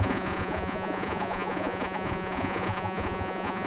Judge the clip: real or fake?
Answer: fake